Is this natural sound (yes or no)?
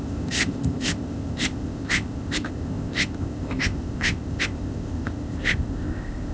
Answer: no